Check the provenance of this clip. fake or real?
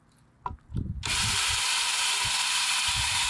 real